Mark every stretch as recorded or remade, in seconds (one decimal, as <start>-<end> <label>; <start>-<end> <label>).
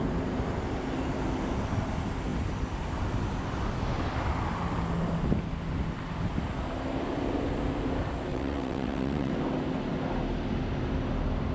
0.0-8.3 recorded; 8.3-9.3 remade; 9.3-11.5 recorded